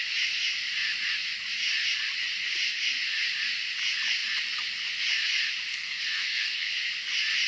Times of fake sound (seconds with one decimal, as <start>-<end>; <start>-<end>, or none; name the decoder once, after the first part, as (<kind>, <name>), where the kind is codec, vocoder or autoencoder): 5.7-6.7 (codec, SNAC)